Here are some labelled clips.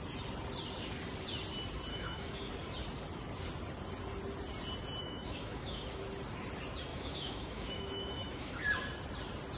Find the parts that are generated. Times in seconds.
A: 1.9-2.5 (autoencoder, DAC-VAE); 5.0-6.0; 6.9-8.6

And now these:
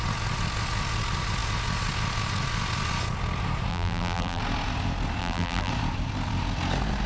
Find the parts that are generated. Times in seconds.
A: 3.7-4.4 (vocoder, BigVGAN v2); 5.2-5.7

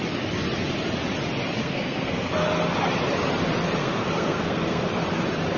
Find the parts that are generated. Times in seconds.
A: 1.6-2.3 (codec, SNAC); 3.8-4.9

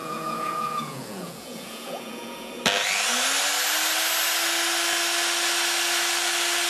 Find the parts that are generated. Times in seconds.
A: 0.0-2.5 (vocoder, Vocos)

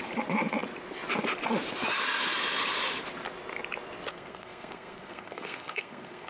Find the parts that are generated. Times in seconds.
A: 4.1-6.3 (codec, SNAC)

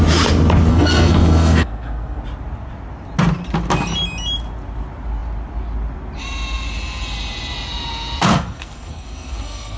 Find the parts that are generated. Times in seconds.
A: 0.7-2.2 (codec, SNAC); 8.3-9.8